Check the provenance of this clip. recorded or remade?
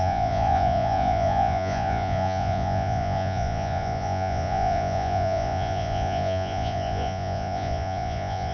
remade